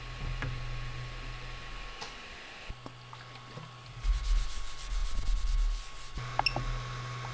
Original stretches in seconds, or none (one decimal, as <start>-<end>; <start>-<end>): 0.0-7.3